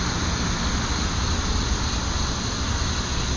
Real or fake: real